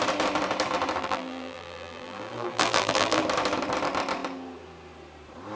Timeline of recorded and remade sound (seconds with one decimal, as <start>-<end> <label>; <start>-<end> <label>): 0.0-1.0 recorded; 1.0-3.2 remade; 3.2-5.6 recorded